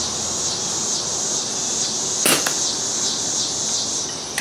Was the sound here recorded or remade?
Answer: recorded